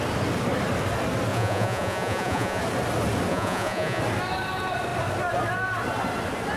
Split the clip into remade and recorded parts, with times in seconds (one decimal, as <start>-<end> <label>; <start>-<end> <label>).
0.0-1.3 recorded; 1.3-2.6 remade; 2.6-3.3 recorded; 3.3-4.0 remade; 4.0-6.6 recorded